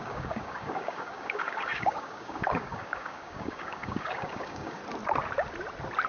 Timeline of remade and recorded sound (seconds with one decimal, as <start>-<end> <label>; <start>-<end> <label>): 0.0-4.8 remade; 4.8-6.1 recorded

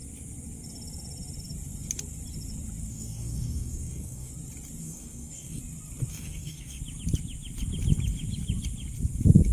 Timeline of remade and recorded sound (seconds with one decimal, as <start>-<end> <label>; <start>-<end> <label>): 0.0-2.9 recorded; 2.9-4.3 remade; 4.3-4.8 recorded; 4.8-5.6 remade; 5.6-6.1 recorded; 6.1-6.8 remade; 6.8-9.5 recorded